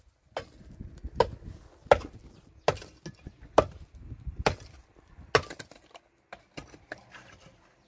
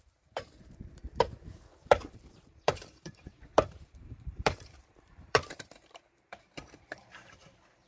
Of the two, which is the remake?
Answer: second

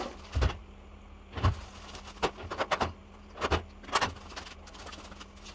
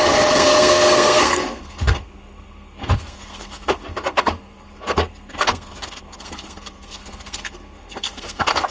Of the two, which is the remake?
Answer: second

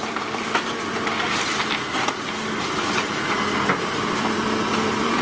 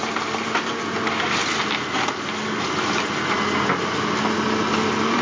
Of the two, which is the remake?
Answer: first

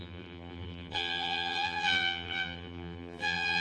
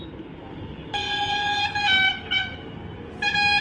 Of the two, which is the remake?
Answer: first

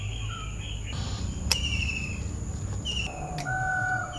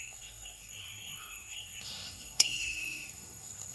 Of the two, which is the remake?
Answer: second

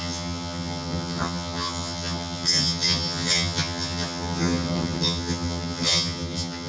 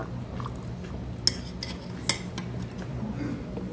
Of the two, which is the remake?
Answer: first